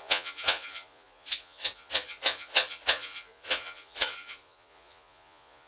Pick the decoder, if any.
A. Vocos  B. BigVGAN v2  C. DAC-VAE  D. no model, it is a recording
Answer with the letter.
A